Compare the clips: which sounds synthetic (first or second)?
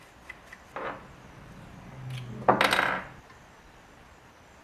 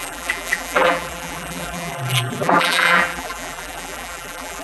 second